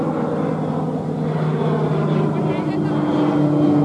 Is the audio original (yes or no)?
yes